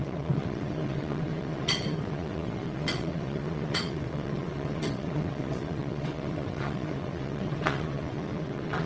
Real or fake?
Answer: fake